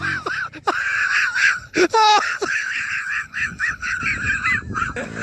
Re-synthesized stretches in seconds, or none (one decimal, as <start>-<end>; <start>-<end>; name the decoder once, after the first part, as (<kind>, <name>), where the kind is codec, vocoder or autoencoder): 1.4-4.0 (codec, HILCodec)